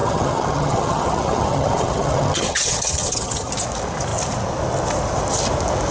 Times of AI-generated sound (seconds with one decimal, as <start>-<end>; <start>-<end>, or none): 0.0-3.5